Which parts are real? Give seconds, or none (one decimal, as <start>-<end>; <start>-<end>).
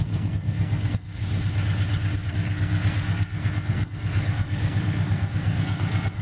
1.2-2.3